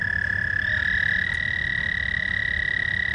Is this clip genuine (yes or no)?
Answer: yes